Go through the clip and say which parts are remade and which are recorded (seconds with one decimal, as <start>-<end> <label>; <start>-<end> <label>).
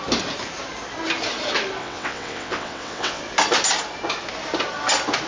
0.0-1.8 recorded; 1.8-3.2 remade; 3.2-5.3 recorded